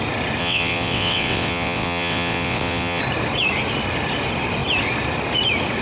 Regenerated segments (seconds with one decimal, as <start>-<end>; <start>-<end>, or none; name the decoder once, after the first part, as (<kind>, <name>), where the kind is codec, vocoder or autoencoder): 0.4-3.0 (vocoder, WaveNeXt)